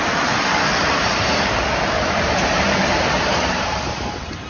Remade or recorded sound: remade